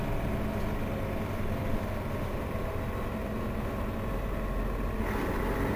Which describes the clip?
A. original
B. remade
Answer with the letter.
A